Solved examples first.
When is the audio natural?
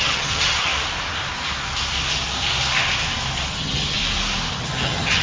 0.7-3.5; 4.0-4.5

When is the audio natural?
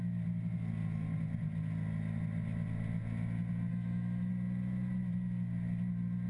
0.0-3.7; 4.3-6.3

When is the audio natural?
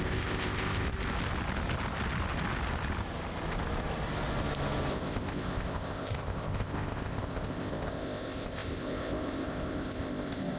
0.9-4.9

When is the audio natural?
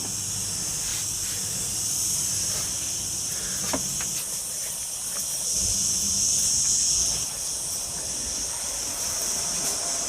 0.0-0.9; 1.6-10.1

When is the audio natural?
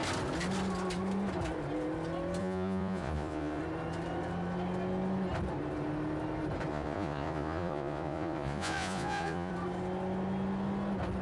0.0-2.4; 3.6-6.7; 9.5-11.2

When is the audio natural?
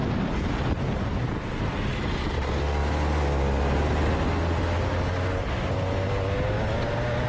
0.0-7.3